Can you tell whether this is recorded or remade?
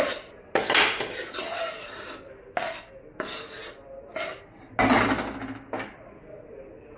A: recorded